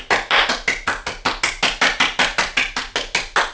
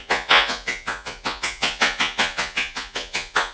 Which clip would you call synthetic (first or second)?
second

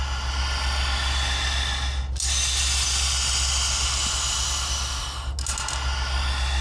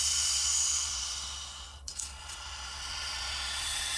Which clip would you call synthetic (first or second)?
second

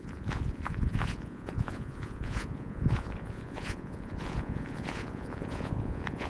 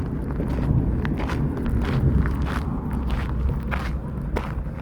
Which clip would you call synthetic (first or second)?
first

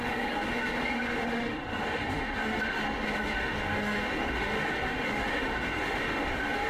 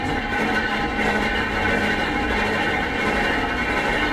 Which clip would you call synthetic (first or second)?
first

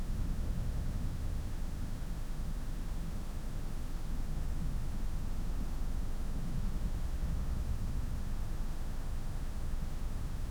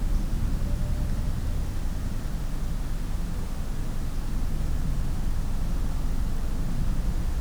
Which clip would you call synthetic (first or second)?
first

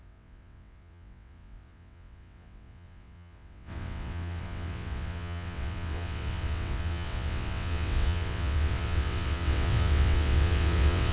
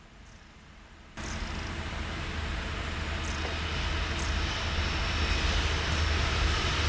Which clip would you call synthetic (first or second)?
first